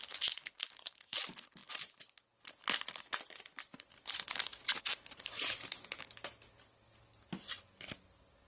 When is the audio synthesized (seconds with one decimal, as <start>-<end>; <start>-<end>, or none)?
none